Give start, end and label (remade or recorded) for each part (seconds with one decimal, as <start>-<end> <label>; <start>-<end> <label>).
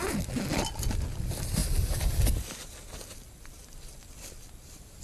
0.0-5.0 recorded